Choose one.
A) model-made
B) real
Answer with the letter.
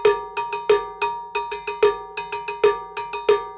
B